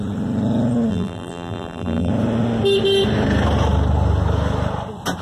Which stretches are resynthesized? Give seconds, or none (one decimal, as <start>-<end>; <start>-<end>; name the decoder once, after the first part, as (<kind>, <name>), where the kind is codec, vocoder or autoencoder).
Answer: 0.9-2.1 (vocoder, BigVGAN v2)